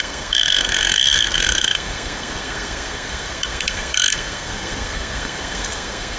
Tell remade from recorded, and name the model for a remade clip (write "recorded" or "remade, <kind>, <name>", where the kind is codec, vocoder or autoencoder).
remade, codec, SNAC